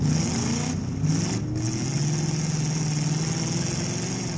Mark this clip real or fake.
real